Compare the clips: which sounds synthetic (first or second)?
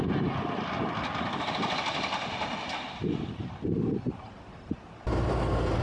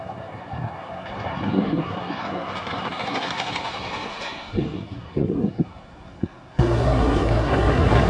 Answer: second